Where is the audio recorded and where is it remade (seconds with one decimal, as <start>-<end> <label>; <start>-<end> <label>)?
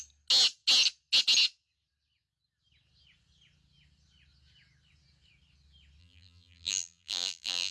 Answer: 0.0-6.0 recorded; 6.0-7.7 remade